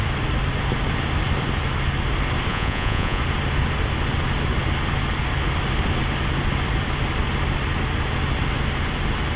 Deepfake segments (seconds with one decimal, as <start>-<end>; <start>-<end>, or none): 2.5-3.2